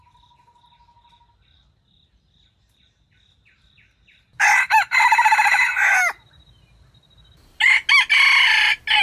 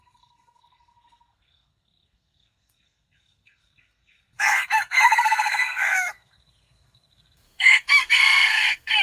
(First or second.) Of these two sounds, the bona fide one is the first